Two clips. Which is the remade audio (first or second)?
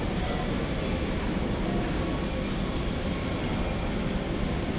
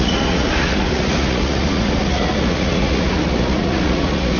second